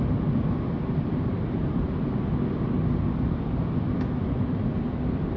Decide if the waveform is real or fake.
fake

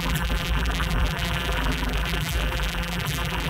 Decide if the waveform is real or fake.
fake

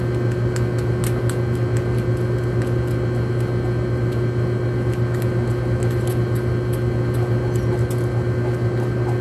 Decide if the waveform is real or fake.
real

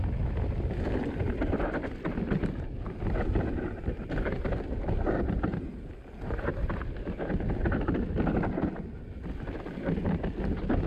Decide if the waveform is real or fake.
real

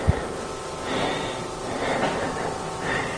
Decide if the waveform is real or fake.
real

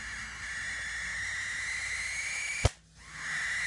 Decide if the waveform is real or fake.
real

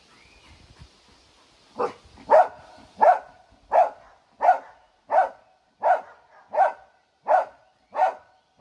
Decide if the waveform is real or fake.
real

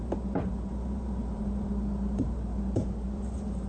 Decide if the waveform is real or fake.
fake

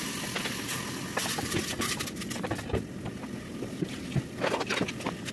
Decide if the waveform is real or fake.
real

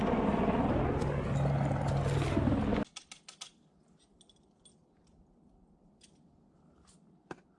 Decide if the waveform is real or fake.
real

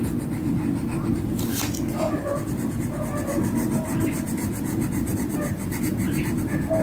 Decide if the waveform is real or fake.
fake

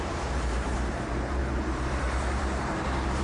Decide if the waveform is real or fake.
fake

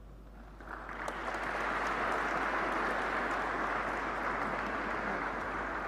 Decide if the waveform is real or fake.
real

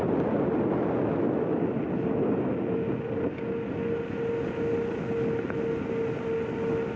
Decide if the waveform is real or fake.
real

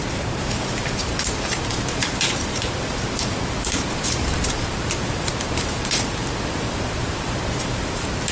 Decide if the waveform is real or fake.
fake